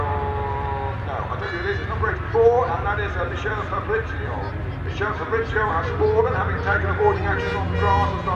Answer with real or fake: real